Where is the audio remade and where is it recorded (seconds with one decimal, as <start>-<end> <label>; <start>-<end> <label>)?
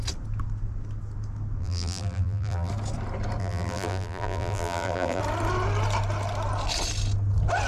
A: 0.0-1.6 recorded; 1.6-2.7 remade; 2.7-3.4 recorded; 3.4-5.2 remade; 5.2-7.7 recorded